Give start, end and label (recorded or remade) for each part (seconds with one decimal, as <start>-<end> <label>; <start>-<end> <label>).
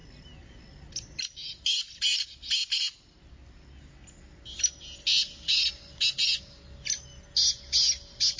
0.0-8.4 recorded